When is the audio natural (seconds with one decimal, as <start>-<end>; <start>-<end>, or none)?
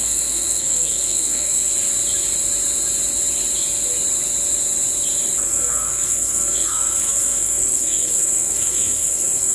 1.7-5.4